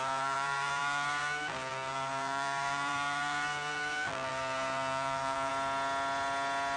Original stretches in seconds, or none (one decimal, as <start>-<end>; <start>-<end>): 5.5-6.8